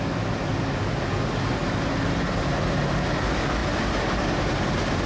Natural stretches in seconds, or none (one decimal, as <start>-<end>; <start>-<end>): 0.0-5.1